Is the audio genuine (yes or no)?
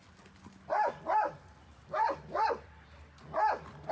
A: yes